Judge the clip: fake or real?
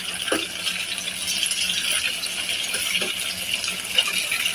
real